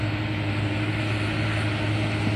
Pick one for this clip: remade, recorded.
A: recorded